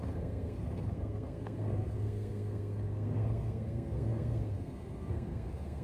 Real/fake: fake